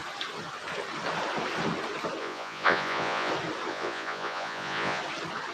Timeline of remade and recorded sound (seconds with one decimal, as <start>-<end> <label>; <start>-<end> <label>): 0.0-2.2 recorded; 2.2-3.3 remade; 3.3-3.7 recorded; 3.7-5.0 remade; 5.0-5.5 recorded